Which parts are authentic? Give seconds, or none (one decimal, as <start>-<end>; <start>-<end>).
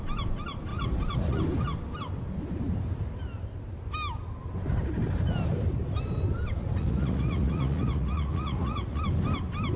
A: 0.0-0.7; 1.4-6.6; 9.0-9.8